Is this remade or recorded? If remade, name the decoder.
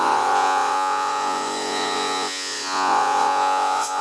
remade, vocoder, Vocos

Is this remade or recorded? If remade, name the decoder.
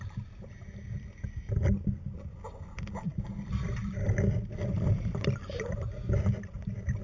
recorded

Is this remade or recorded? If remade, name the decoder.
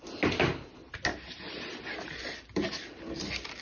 recorded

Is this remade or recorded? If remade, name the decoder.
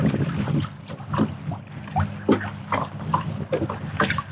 recorded